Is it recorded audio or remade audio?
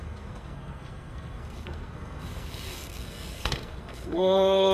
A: remade